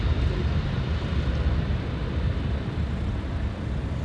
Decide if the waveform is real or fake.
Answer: real